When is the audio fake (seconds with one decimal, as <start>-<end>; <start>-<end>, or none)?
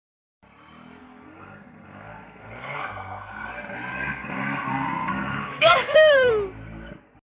1.0-3.5; 3.9-6.3